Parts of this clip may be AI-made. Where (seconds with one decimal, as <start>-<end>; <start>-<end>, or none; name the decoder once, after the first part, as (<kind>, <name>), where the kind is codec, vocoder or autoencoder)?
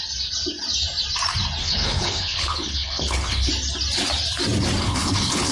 1.6-3.5 (codec, HILCodec); 4.8-5.5